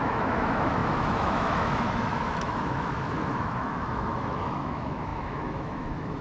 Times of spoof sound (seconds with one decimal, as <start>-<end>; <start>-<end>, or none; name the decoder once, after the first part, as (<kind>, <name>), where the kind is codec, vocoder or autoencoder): 0.0-6.2 (autoencoder, DAC-VAE)